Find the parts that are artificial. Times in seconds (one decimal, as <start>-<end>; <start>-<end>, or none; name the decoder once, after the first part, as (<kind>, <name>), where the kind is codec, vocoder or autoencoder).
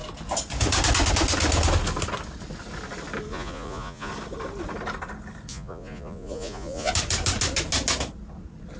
3.3-4.1 (vocoder, Vocos); 5.5-6.9